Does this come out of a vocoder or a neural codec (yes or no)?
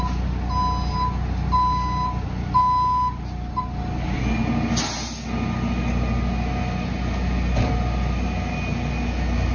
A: no